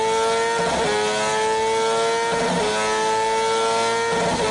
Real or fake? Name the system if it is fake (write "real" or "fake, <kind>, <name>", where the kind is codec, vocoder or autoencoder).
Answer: real